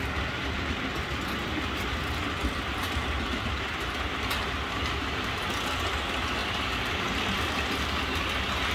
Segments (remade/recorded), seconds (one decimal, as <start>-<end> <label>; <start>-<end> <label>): 0.0-2.4 recorded; 2.4-5.9 remade; 5.9-6.4 recorded; 6.4-7.5 remade; 7.5-8.7 recorded